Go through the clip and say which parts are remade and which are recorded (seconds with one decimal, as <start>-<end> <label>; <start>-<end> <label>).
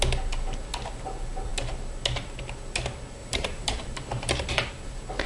0.0-3.2 recorded; 3.2-4.5 remade; 4.5-5.3 recorded